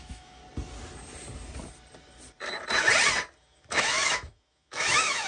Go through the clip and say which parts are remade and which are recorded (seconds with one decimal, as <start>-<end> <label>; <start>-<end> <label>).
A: 0.0-0.4 remade; 0.4-3.4 recorded; 3.4-5.3 remade